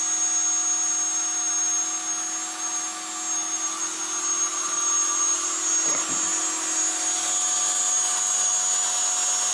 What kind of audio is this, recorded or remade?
recorded